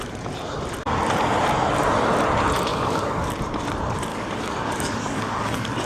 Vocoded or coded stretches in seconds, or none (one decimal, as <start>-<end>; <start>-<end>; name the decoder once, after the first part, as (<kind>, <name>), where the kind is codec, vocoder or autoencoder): 2.7-3.3 (codec, DAC); 4.1-5.9